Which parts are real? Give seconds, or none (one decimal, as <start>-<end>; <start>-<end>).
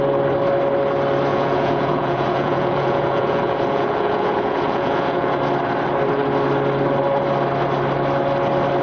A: 0.0-1.3; 5.4-8.8